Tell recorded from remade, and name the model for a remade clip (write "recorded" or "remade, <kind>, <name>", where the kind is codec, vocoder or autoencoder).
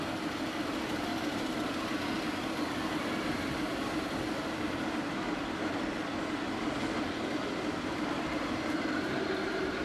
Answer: recorded